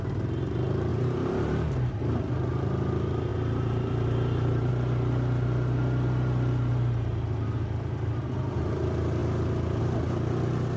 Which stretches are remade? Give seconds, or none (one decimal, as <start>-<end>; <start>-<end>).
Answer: 0.9-1.9; 3.3-4.7